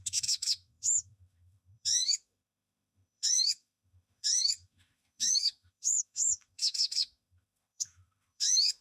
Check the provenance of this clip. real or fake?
fake